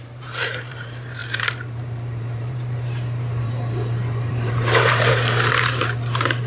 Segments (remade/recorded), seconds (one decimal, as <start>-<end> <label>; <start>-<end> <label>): 0.0-6.5 remade

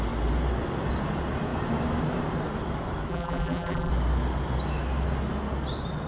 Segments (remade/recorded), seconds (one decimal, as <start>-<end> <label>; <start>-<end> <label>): 0.0-3.1 recorded; 3.1-3.9 remade; 3.9-6.1 recorded

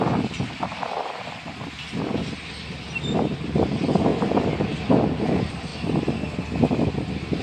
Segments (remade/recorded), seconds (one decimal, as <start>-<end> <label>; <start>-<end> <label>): 0.0-0.7 remade; 0.7-2.5 recorded; 2.5-4.1 remade; 4.1-5.2 recorded; 5.2-5.7 remade; 5.7-7.4 recorded

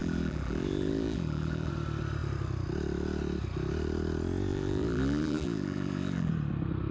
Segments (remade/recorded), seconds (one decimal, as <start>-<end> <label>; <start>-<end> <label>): 0.0-1.7 remade; 1.7-4.5 recorded; 4.5-6.3 remade; 6.3-6.9 recorded

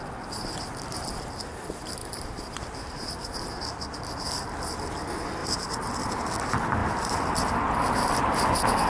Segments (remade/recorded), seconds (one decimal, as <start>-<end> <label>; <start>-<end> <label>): 0.0-2.0 recorded; 2.0-3.6 remade; 3.6-8.9 recorded

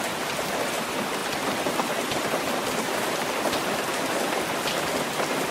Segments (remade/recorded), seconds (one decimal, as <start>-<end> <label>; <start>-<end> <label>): 0.0-1.2 recorded; 1.2-4.5 remade; 4.5-5.5 recorded

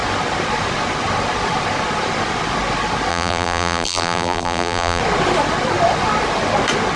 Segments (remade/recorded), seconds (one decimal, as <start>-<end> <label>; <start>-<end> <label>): 0.0-3.1 recorded; 3.1-5.0 remade; 5.0-7.0 recorded

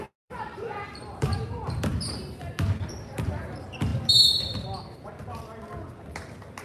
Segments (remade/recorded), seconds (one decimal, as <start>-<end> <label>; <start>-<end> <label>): 0.0-1.9 remade; 1.9-2.9 recorded; 2.9-3.9 remade; 3.9-6.6 recorded